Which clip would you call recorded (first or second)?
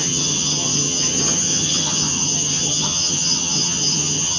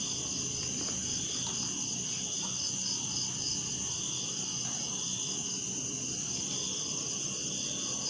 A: second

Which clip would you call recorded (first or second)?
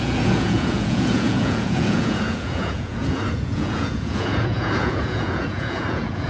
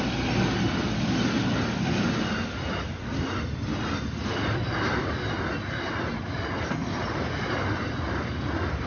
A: second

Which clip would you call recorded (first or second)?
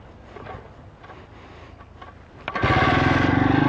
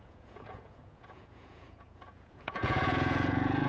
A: first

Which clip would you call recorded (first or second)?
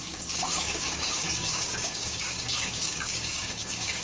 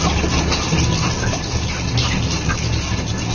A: second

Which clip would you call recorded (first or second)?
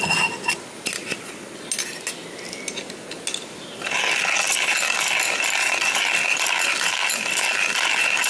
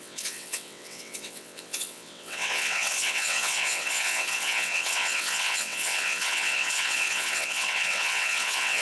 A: first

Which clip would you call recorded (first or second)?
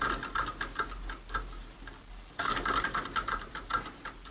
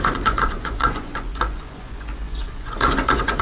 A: first